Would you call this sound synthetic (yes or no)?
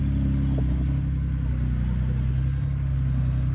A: no